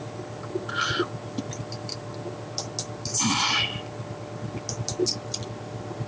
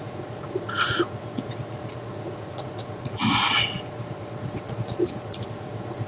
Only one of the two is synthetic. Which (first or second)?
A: second